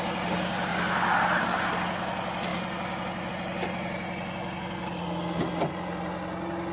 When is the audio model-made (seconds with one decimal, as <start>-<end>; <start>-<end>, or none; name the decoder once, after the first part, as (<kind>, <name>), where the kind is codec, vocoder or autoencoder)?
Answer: none